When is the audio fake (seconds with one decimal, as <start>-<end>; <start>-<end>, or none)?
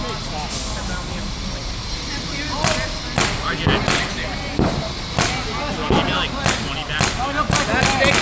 none